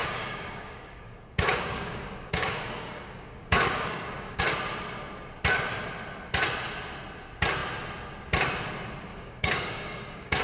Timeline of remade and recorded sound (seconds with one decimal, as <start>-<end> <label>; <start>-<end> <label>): 0.0-4.4 remade; 4.4-9.1 recorded; 9.1-10.4 remade